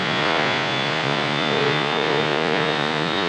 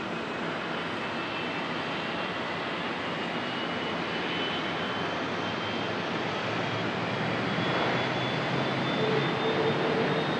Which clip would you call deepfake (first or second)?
first